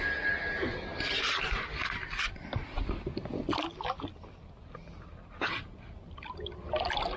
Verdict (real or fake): real